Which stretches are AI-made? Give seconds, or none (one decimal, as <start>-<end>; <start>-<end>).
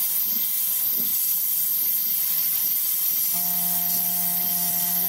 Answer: 1.1-2.2